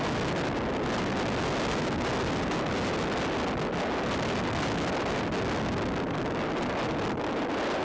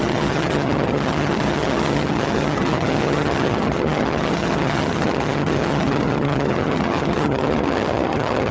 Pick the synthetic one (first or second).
second